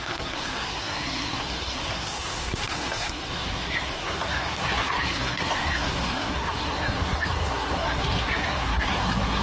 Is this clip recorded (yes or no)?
no